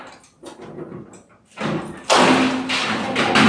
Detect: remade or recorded recorded